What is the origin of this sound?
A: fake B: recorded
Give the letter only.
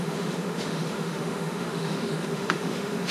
A